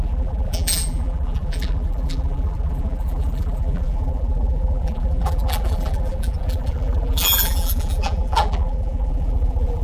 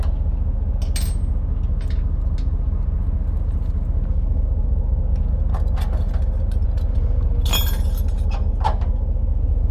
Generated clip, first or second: first